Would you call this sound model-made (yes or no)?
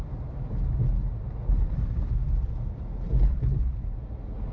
no